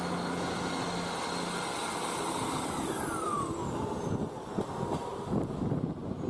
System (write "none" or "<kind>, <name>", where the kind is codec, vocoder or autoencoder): none